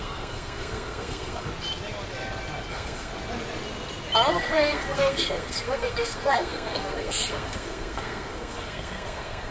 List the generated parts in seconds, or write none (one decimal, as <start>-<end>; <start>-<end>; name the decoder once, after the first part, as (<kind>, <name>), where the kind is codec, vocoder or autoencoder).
0.0-1.5 (codec, SNAC); 2.7-3.1; 4.3-9.5